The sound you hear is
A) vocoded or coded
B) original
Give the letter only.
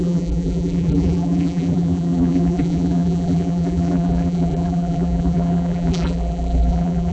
A